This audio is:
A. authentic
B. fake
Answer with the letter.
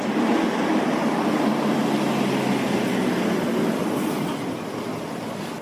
A